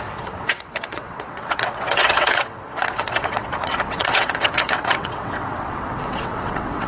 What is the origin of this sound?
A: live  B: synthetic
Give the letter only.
B